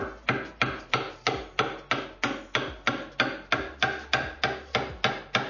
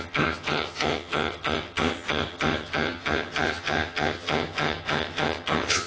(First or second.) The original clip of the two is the first